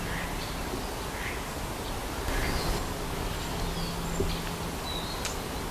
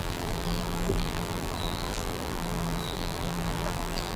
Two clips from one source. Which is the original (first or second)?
first